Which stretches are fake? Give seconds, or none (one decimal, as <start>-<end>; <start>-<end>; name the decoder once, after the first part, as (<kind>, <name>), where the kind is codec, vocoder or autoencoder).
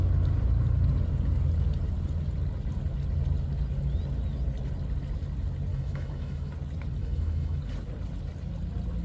5.7-6.5 (autoencoder, DAC-VAE); 7.0-7.6